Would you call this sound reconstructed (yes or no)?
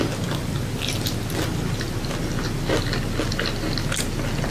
no